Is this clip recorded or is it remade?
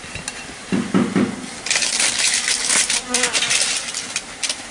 recorded